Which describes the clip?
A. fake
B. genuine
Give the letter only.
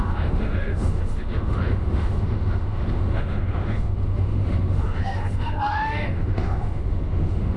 A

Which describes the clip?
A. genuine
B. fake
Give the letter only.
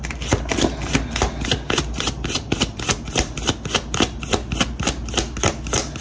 A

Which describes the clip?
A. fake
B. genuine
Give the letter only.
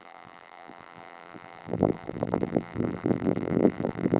A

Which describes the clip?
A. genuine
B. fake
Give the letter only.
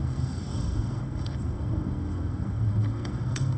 B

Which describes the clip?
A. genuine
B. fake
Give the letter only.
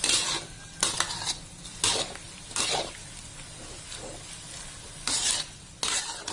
A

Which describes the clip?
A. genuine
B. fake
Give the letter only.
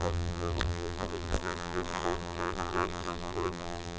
B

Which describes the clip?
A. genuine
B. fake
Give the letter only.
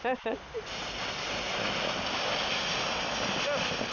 A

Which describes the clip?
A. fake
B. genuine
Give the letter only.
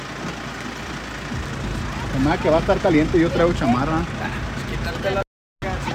B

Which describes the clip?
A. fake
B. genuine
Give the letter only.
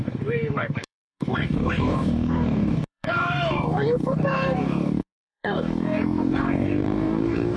A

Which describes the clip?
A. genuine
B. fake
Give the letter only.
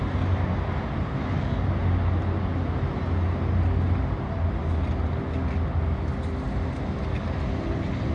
A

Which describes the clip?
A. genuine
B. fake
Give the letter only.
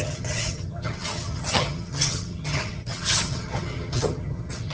B